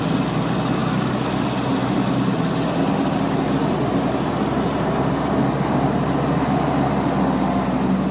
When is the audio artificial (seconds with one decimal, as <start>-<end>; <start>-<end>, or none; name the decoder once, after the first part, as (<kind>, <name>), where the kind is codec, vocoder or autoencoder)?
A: none